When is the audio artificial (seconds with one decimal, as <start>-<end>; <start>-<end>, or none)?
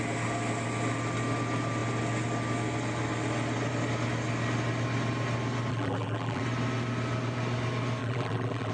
5.7-6.4; 8.0-8.7